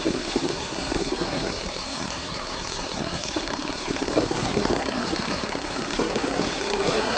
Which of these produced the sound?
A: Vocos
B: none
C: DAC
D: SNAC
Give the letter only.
D